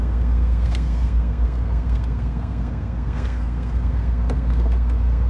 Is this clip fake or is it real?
fake